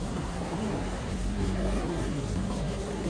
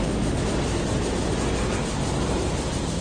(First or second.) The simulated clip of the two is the first